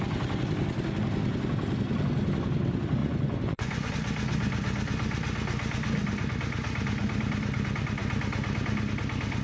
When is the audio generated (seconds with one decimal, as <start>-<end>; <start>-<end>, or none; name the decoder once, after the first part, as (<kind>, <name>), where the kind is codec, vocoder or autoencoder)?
3.0-3.9 (vocoder, Vocos)